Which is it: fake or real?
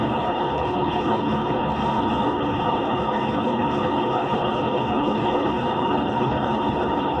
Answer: fake